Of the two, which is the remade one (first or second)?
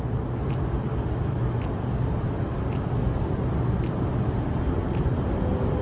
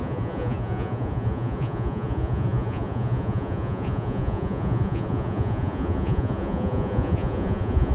second